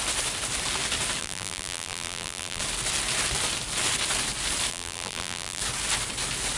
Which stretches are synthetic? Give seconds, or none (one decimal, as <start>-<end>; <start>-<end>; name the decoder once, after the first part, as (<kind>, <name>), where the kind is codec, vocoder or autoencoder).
1.2-2.6 (vocoder, BigVGAN v2); 4.7-5.6